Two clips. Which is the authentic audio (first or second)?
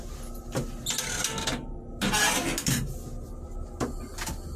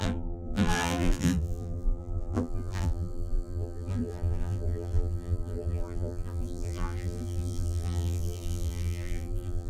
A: first